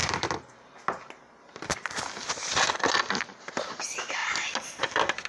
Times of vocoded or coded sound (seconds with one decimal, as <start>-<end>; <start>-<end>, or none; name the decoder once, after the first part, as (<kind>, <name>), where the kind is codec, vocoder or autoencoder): 0.0-2.7 (vocoder, BigVGAN v2)